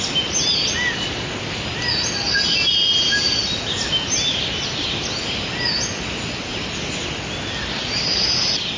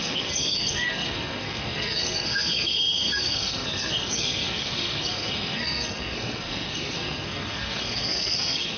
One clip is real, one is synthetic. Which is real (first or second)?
first